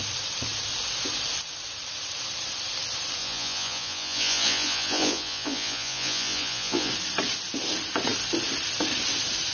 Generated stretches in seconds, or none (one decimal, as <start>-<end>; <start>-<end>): 3.2-6.9